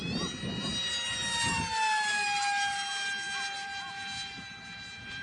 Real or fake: real